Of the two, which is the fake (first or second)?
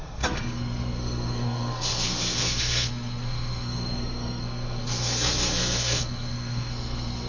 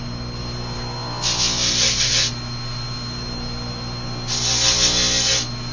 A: first